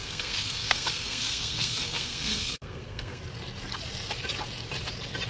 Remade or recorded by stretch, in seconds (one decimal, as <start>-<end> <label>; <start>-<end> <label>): 0.0-3.2 remade; 3.2-5.3 recorded